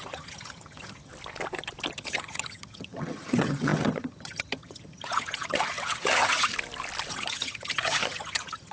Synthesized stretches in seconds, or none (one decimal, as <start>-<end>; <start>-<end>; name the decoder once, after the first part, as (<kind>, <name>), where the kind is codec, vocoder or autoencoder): 0.0-1.1 (vocoder, HiFi-GAN); 1.9-6.5; 7.1-8.7